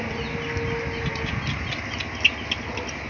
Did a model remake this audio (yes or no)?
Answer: no